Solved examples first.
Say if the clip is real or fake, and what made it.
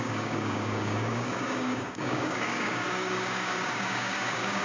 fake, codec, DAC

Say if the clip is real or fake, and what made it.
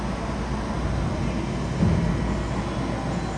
real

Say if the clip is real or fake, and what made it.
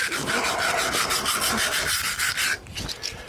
real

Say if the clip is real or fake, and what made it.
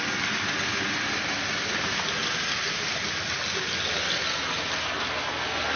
real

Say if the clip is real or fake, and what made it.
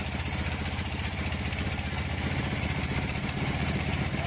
fake, vocoder, BigVGAN v2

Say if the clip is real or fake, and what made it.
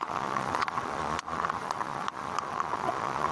fake, vocoder, Vocos